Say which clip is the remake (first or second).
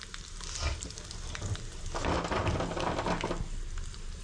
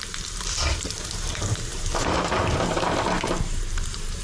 second